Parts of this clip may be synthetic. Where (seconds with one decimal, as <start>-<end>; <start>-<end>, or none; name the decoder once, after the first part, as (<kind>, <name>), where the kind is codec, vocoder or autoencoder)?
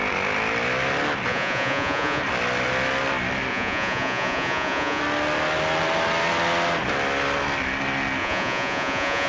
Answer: 1.3-2.2 (vocoder, Vocos); 3.5-5.0; 8.2-9.3